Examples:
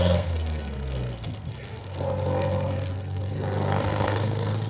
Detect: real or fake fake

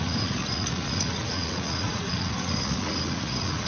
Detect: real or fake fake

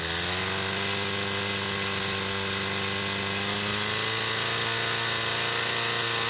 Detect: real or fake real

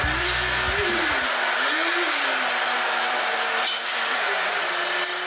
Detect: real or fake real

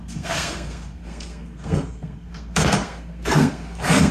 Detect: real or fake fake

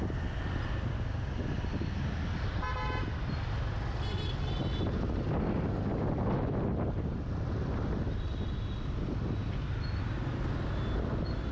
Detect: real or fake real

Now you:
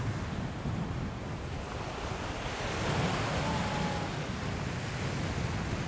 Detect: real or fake real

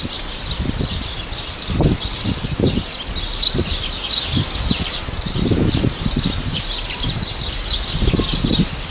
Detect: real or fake real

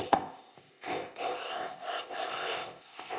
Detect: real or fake fake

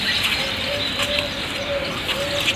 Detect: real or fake real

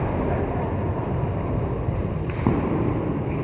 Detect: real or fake real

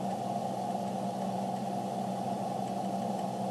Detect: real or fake real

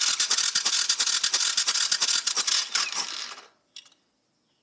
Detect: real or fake real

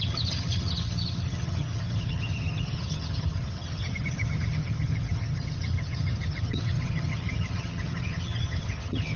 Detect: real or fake fake